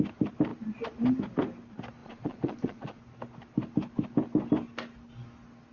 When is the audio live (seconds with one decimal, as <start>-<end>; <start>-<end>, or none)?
0.0-2.0; 3.0-5.7